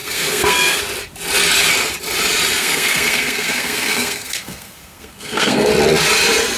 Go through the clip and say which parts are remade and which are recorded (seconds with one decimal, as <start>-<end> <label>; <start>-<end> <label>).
0.0-0.8 remade; 0.8-2.6 recorded; 2.6-5.7 remade; 5.7-6.6 recorded